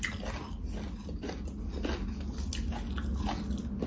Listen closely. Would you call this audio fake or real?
real